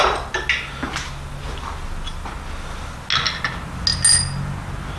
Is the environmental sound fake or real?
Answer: real